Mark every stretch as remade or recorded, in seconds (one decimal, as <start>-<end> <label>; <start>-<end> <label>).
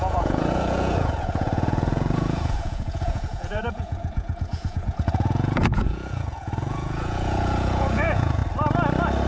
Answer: 0.0-8.4 remade; 8.4-9.3 recorded